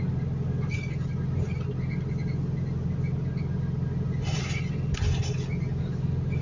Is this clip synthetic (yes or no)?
no